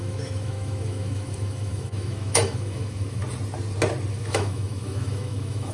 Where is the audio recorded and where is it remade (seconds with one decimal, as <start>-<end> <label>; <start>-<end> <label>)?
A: 0.0-3.2 remade; 3.2-4.1 recorded; 4.1-5.7 remade